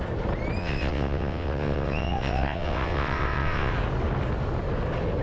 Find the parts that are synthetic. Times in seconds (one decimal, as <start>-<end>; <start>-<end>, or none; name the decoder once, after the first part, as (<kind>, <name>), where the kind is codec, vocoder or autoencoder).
0.6-3.7 (vocoder, WaveNeXt)